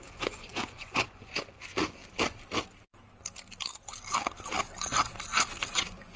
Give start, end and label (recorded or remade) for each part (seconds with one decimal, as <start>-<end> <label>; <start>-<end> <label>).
0.0-2.0 remade; 2.0-5.7 recorded; 5.7-6.2 remade

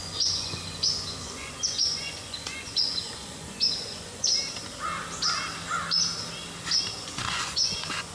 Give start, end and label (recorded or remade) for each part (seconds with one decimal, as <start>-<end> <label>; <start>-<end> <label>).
0.0-4.3 remade; 4.3-7.0 recorded; 7.0-8.1 remade

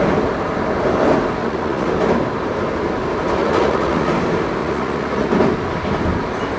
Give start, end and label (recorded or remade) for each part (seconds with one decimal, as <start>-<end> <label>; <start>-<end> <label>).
0.0-1.4 recorded; 1.4-1.9 remade; 1.9-3.4 recorded; 3.4-4.1 remade; 4.1-4.6 recorded; 4.6-5.3 remade; 5.3-6.6 recorded

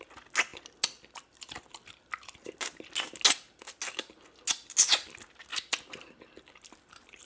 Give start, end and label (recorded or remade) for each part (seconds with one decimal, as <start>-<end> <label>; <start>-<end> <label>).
0.0-7.3 recorded